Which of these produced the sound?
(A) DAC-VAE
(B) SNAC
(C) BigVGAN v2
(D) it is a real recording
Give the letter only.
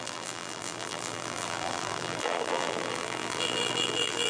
C